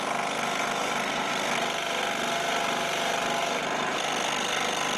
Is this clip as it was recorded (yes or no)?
yes